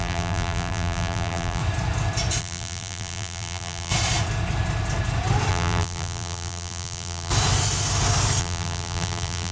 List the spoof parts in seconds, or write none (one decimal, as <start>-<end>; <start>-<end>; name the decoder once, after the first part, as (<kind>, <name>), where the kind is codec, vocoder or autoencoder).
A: 0.0-1.6 (vocoder, BigVGAN v2); 2.4-3.9; 5.5-7.3; 8.4-9.5